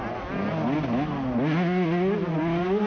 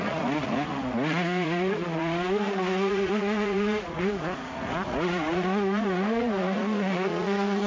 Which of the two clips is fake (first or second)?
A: second